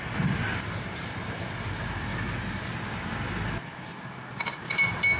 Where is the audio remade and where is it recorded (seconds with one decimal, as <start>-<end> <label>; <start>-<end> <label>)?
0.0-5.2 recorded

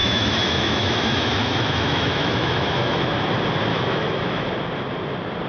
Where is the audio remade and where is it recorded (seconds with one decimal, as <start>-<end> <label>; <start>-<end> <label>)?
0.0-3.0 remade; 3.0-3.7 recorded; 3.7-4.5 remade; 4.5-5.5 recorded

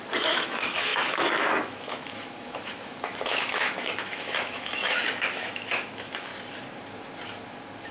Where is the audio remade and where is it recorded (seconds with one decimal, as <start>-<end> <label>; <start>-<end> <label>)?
0.0-6.3 remade; 6.3-7.9 recorded

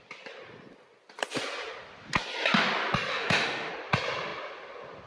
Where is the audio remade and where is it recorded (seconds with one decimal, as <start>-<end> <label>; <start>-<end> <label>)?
0.0-3.1 recorded; 3.1-3.7 remade; 3.7-5.1 recorded